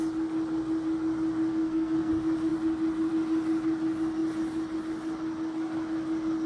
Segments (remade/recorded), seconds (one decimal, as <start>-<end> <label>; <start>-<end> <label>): 0.0-1.5 recorded; 1.5-2.1 remade; 2.1-6.5 recorded